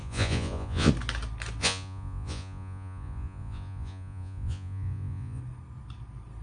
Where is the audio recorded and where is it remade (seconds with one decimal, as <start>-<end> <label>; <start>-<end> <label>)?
0.0-0.9 remade; 0.9-1.6 recorded; 1.6-5.4 remade; 5.4-6.4 recorded